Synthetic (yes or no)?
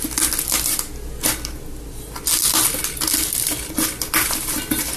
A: no